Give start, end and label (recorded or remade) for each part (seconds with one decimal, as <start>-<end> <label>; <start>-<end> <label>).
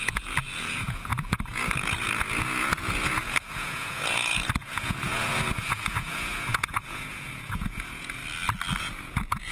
0.0-8.2 remade; 8.2-8.8 recorded; 8.8-9.5 remade